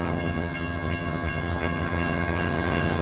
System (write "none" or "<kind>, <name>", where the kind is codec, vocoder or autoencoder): vocoder, HiFi-GAN